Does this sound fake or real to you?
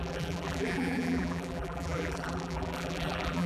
fake